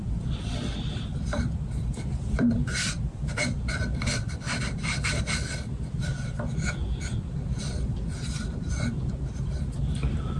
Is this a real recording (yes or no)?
no